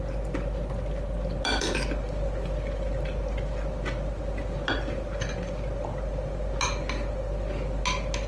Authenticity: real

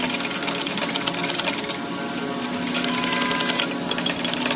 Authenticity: real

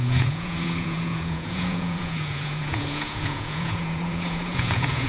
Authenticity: fake